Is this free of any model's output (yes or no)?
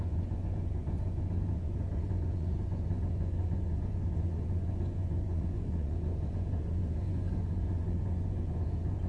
no